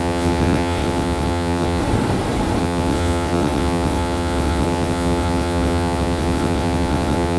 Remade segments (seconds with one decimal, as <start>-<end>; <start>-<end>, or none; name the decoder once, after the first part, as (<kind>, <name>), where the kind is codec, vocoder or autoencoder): 0.0-1.8 (vocoder, WaveNeXt); 2.6-7.4